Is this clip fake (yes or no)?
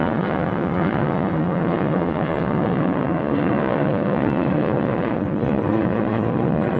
yes